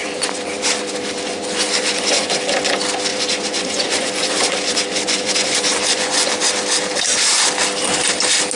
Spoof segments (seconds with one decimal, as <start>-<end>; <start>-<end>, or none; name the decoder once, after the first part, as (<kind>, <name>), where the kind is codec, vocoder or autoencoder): 0.0-2.3 (vocoder, Vocos); 3.1-6.5